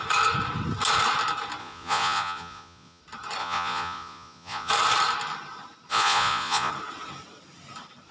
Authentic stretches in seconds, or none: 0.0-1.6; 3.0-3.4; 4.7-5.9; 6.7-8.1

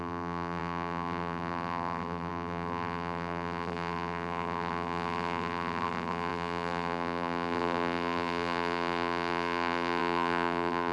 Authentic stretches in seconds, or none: none

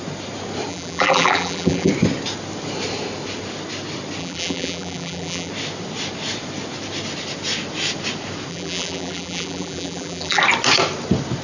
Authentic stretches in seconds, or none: 0.0-0.7; 1.9-4.2; 5.5-8.5; 10.4-11.4

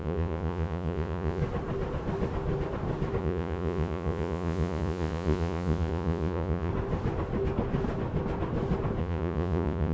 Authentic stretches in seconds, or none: 1.4-3.2; 6.7-9.0

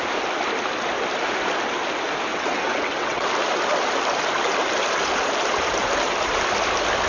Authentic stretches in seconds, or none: 0.0-2.3; 3.3-7.1

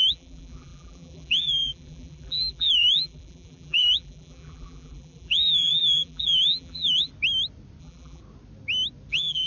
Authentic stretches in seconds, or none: 7.1-7.8; 8.2-9.1

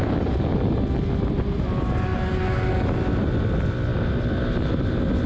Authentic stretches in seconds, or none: 0.0-5.3